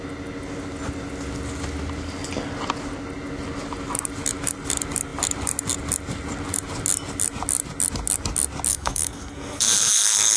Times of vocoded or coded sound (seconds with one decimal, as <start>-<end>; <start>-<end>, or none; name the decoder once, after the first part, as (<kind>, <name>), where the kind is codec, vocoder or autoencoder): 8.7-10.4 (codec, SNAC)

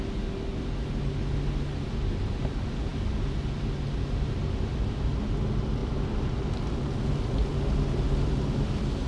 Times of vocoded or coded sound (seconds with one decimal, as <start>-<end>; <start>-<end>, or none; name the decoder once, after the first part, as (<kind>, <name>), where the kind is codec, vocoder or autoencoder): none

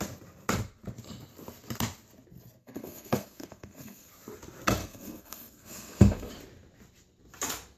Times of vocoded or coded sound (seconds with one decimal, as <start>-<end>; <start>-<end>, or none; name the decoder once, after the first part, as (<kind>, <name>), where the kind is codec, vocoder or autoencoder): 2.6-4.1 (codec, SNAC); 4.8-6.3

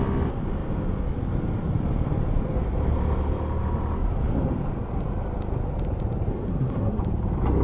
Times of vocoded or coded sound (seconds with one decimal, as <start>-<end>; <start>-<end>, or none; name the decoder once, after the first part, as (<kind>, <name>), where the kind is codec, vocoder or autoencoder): 6.3-7.0 (codec, SNAC)

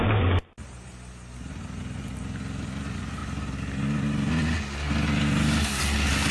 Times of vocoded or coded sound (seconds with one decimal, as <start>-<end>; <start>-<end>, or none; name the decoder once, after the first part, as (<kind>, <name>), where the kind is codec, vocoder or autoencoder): none